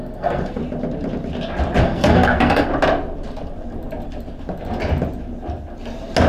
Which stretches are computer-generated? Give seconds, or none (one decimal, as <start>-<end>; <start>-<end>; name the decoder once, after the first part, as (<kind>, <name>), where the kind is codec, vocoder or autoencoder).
0.0-0.6 (codec, SNAC); 1.8-2.7